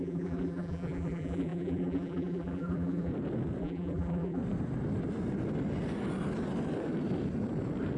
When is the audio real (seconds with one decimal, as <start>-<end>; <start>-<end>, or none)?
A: 3.1-3.6; 4.4-8.0